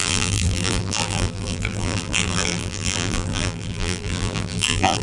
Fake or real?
fake